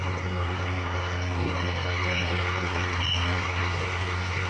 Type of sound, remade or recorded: remade